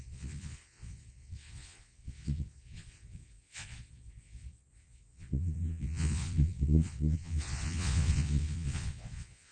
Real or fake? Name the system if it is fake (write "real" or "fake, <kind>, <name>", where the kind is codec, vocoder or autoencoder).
fake, vocoder, Vocos